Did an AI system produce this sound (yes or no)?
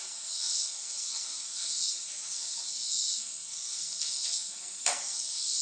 yes